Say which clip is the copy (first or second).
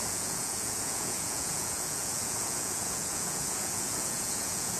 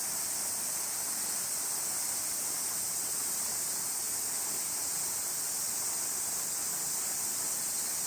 first